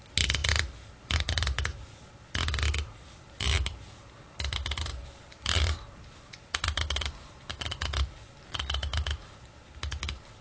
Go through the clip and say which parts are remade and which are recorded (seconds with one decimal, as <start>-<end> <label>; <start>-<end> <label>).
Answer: 0.0-4.9 recorded; 4.9-8.5 remade; 8.5-10.4 recorded